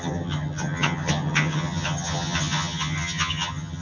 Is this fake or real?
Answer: fake